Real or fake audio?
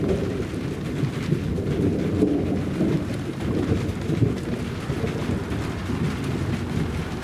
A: real